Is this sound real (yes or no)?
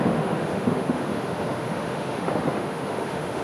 no